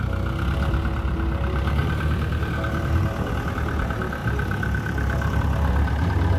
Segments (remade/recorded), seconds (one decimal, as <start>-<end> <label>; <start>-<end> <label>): 0.0-1.8 recorded; 1.8-3.5 remade; 3.5-4.2 recorded; 4.2-5.4 remade; 5.4-6.4 recorded